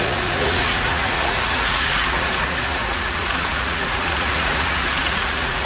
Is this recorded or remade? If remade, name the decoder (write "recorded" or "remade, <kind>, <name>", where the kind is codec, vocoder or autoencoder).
remade, vocoder, Vocos